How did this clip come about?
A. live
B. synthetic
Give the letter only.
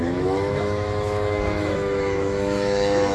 B